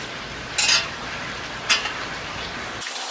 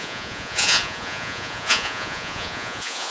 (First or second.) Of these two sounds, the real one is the first